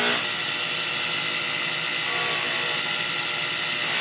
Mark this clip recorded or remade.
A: recorded